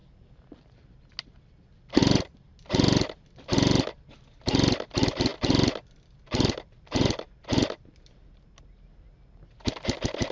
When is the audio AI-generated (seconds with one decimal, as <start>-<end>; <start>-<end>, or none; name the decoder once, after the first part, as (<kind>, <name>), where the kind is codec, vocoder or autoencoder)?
none